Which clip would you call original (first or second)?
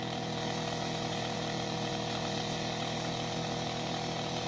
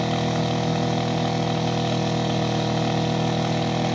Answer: second